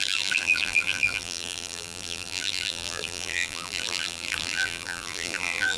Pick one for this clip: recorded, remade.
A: remade